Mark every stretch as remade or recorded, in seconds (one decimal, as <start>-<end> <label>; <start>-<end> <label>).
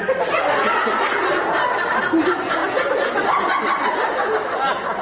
0.0-5.0 recorded